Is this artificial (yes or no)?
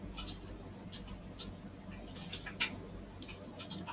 no